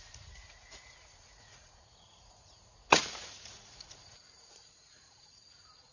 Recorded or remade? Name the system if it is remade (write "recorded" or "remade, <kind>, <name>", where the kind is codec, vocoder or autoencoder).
remade, vocoder, Vocos